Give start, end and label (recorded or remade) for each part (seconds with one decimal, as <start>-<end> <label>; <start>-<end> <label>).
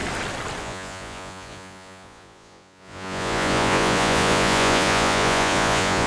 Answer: 0.0-0.6 recorded; 0.6-6.1 remade